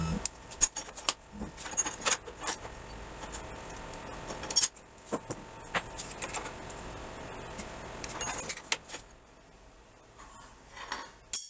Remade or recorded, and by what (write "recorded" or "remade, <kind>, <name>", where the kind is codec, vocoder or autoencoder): recorded